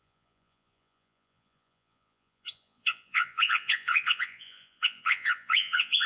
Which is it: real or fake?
fake